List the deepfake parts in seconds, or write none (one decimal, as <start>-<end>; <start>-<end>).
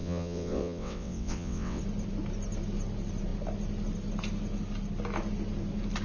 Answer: 0.0-1.8